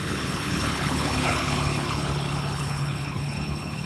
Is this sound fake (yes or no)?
yes